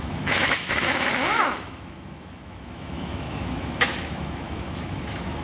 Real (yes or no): no